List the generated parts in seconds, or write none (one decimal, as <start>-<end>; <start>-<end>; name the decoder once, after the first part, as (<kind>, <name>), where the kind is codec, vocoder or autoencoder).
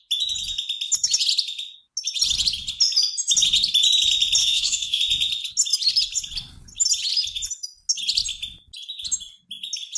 4.4-5.0 (autoencoder, DAC-VAE)